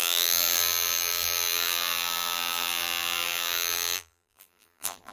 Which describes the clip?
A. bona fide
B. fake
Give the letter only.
B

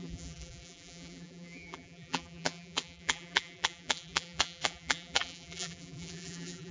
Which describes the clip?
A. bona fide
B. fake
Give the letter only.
B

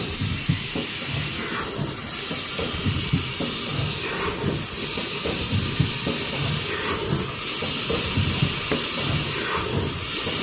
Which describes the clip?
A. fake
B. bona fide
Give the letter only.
B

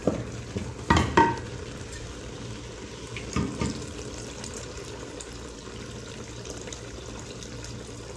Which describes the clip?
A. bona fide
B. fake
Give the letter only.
B